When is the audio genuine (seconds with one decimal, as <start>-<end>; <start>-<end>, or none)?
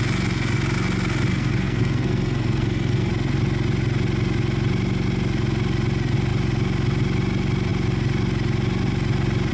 0.0-1.3; 3.1-9.5